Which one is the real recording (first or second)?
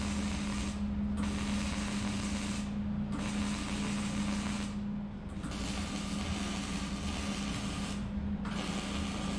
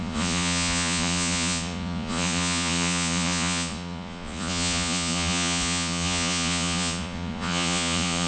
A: first